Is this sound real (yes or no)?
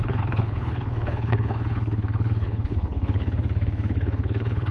no